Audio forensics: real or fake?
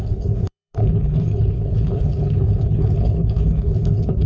fake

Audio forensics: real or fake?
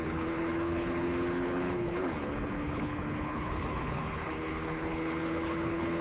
fake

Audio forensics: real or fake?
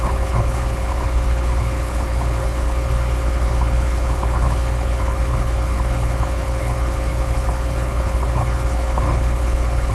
fake